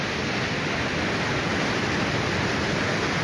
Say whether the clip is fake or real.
real